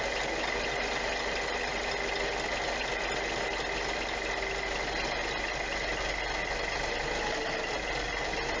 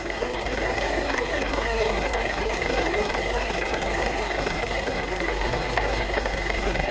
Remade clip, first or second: second